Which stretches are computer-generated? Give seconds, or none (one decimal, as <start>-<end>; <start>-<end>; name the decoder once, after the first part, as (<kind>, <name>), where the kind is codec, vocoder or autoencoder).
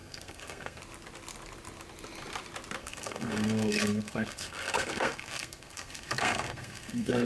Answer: 0.0-0.8 (codec, SNAC); 2.8-7.3